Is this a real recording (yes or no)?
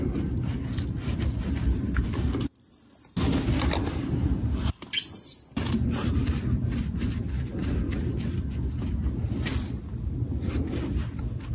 yes